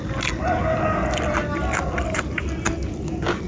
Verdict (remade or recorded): recorded